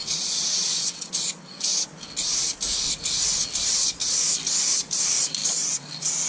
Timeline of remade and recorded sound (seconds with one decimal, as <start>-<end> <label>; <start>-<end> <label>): 0.0-1.1 remade; 1.1-6.3 recorded